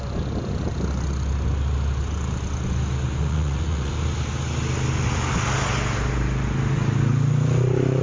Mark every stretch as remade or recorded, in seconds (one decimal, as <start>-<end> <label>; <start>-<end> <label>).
0.0-3.2 recorded; 3.2-3.9 remade; 3.9-8.0 recorded